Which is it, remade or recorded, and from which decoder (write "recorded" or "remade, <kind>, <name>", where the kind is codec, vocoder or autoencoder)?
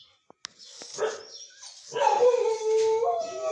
recorded